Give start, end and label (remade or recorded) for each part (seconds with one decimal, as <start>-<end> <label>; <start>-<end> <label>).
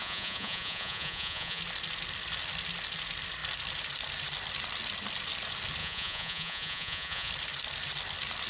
0.0-1.6 remade; 1.6-5.8 recorded; 5.8-7.3 remade; 7.3-8.5 recorded